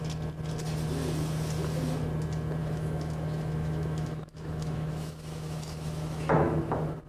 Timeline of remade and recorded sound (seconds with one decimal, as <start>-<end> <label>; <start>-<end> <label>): 0.0-2.6 recorded; 2.6-6.6 remade; 6.6-7.1 recorded